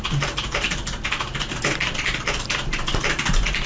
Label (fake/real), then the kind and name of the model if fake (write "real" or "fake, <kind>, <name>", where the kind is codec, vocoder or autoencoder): real